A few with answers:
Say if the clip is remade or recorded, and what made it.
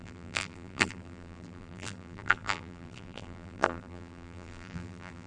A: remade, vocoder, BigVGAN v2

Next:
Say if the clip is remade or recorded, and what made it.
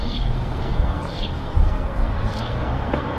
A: remade, codec, SNAC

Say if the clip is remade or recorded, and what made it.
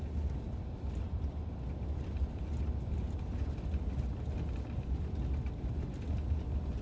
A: recorded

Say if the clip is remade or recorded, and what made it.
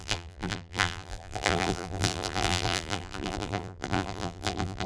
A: remade, vocoder, BigVGAN v2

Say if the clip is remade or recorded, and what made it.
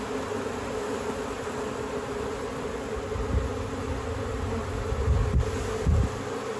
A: recorded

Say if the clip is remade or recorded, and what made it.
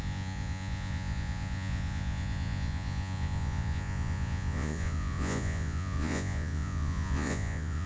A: remade, vocoder, Vocos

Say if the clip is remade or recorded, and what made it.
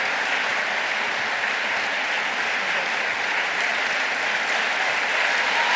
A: recorded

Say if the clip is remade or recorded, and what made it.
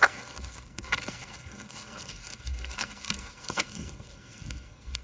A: remade, codec, SNAC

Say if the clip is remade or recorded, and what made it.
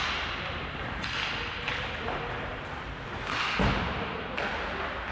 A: recorded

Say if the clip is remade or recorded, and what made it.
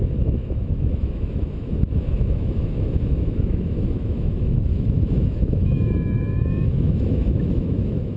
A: remade, autoencoder, DAC-VAE